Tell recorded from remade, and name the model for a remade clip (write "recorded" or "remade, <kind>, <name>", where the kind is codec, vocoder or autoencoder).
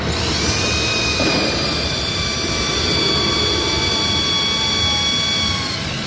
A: recorded